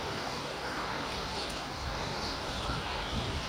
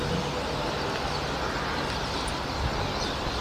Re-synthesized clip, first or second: first